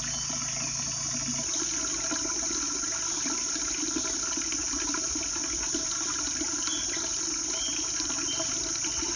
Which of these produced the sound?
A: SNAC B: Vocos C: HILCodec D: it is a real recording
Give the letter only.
D